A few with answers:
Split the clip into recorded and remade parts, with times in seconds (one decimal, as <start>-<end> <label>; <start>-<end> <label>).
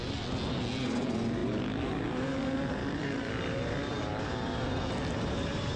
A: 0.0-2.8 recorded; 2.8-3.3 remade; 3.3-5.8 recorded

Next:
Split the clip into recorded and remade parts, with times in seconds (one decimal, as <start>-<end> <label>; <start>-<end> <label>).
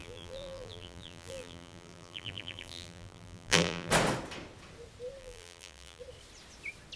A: 0.0-3.9 remade; 3.9-5.2 recorded; 5.2-6.0 remade; 6.0-7.0 recorded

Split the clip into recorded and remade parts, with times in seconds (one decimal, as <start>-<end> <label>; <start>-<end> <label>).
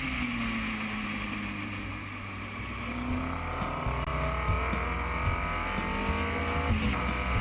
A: 0.0-7.4 recorded